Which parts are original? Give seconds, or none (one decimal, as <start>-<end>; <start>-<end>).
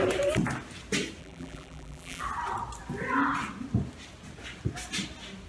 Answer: 0.0-1.2; 2.2-5.5